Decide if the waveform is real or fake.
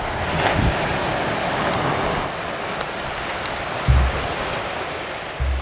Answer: real